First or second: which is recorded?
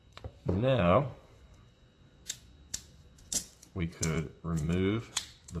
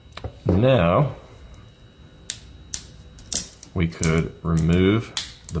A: second